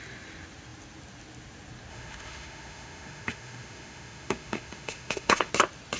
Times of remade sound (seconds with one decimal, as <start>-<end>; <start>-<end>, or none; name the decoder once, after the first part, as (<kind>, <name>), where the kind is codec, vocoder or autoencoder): 1.9-5.5 (autoencoder, DAC-VAE)